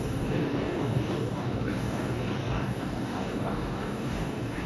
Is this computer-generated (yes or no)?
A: yes